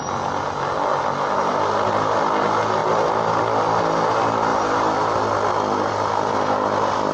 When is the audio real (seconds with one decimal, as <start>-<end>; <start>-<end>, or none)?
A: 0.0-2.8; 3.8-7.1